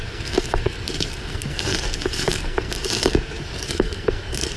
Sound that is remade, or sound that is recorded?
remade